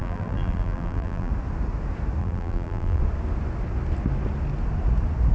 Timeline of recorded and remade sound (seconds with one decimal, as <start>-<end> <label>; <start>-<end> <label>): 0.0-1.3 remade; 1.3-2.2 recorded; 2.2-3.0 remade; 3.0-5.3 recorded